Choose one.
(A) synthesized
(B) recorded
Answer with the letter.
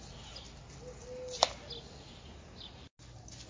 B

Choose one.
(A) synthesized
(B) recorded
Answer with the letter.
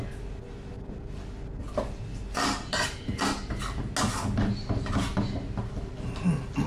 B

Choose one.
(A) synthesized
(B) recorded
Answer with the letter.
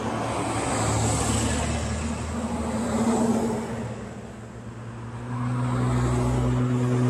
B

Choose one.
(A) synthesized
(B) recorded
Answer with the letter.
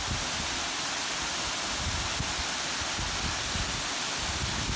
B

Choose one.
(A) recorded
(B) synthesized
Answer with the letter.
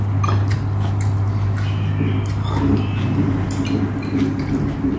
A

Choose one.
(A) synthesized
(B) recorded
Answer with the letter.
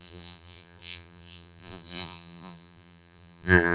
A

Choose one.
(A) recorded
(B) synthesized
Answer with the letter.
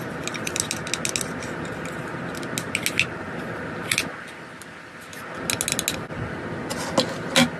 A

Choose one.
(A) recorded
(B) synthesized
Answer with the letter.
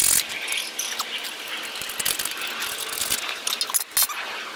A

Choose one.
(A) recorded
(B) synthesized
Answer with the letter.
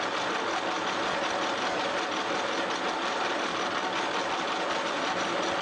A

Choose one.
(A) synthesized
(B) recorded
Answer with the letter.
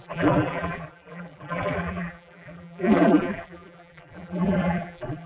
A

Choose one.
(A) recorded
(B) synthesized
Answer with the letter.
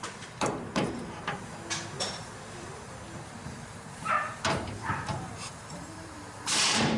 B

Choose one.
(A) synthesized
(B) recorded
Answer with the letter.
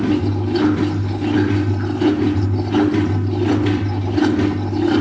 B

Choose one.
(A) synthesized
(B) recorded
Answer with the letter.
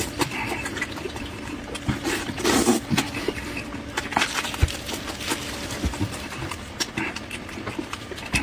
A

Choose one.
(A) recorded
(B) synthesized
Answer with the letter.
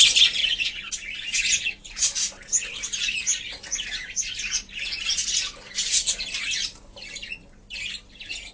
A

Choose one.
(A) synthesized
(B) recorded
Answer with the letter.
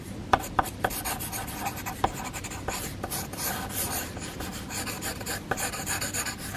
A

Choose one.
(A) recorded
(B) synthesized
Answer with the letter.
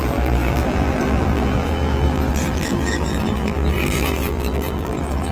B